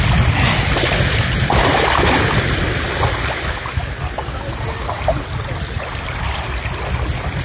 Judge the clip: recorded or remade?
recorded